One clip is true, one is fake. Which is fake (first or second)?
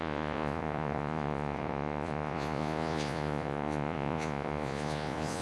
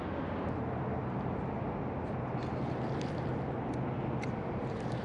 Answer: first